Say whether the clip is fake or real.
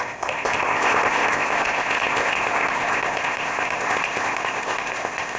fake